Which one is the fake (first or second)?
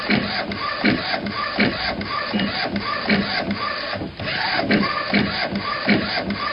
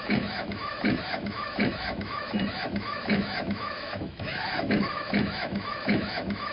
second